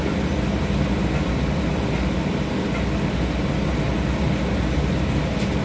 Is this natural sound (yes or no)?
yes